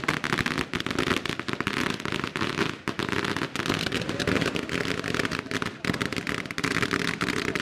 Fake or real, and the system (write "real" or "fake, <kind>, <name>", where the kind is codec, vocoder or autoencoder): real